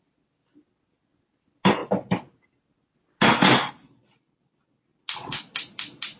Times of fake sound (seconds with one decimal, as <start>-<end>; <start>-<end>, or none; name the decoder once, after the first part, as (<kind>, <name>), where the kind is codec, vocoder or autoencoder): none